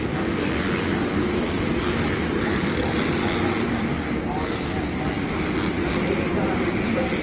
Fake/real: real